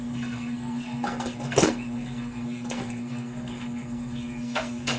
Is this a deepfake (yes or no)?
yes